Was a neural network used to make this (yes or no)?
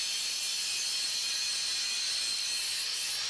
no